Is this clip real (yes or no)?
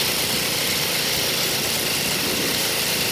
yes